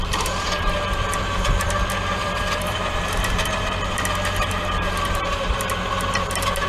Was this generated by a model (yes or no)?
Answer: yes